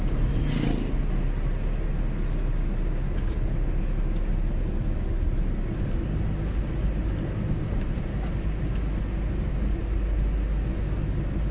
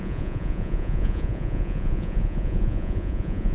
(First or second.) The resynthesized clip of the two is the second